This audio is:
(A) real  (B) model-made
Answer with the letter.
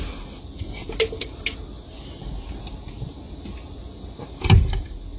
A